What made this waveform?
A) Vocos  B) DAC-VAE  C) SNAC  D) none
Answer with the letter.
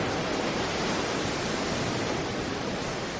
D